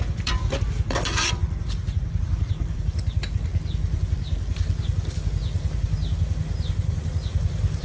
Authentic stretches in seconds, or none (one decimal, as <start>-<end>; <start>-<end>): 1.4-2.2; 3.5-6.9